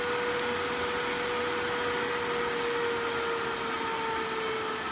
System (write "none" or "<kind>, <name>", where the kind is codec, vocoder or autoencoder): none